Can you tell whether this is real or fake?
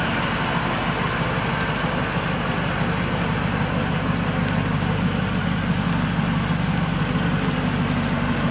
real